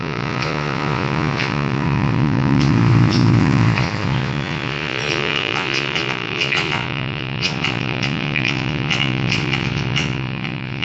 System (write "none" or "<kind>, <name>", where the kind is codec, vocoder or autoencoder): vocoder, Vocos